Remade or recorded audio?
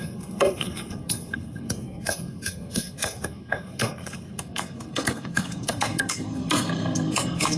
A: remade